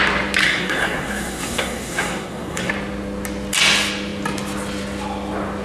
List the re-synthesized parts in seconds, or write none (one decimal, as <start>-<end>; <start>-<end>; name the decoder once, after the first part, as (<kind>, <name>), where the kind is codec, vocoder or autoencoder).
0.4-2.7 (codec, SNAC)